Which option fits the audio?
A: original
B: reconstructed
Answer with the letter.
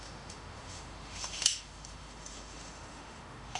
B